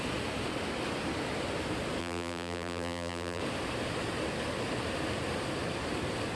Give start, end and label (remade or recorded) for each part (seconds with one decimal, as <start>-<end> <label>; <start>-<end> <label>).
0.0-2.0 recorded; 2.0-3.4 remade; 3.4-6.4 recorded